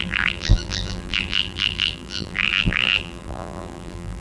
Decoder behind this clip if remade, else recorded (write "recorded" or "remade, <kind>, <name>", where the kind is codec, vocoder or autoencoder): remade, vocoder, BigVGAN v2